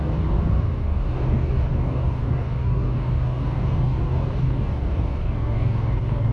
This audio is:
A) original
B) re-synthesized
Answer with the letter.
B